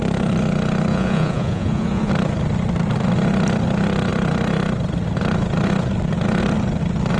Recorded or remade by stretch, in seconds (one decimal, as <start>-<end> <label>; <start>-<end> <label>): 0.0-0.9 recorded; 0.9-2.1 remade; 2.1-7.2 recorded